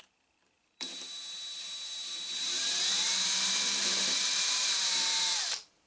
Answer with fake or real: fake